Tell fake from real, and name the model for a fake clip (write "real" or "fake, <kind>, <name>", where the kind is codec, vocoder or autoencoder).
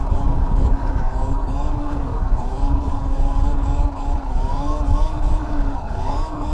fake, codec, DAC